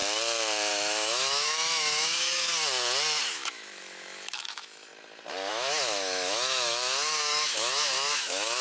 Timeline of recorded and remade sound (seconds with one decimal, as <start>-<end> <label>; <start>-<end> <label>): 0.0-0.7 recorded; 0.7-2.5 remade; 2.5-3.3 recorded; 3.3-4.9 remade; 4.9-5.5 recorded; 5.5-8.6 remade

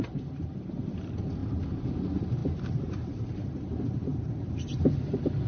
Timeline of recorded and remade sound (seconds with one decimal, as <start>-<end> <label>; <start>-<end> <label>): 0.0-1.4 recorded; 1.4-1.9 remade; 1.9-2.4 recorded; 2.4-3.5 remade; 3.5-5.5 recorded